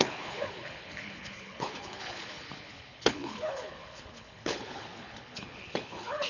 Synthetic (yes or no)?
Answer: yes